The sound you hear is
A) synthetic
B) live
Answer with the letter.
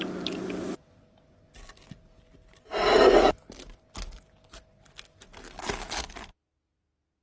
B